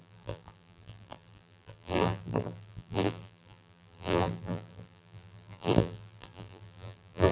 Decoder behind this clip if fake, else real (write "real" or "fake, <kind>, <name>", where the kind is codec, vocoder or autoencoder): fake, vocoder, BigVGAN v2